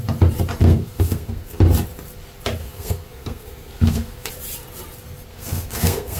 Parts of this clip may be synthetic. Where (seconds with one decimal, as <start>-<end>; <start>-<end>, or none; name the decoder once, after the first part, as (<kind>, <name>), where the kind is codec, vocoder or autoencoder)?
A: 0.6-1.6 (codec, SNAC); 2.6-4.3; 5.3-6.2